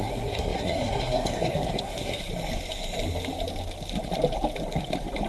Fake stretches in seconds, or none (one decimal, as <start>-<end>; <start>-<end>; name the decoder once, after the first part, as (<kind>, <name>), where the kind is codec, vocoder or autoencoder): 0.0-2.3 (codec, SNAC)